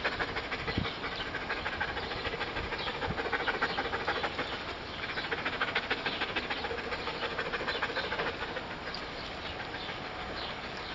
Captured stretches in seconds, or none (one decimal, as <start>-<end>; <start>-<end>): 0.0-10.2